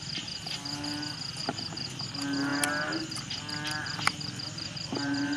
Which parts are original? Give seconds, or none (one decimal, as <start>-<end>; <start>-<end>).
0.0-5.4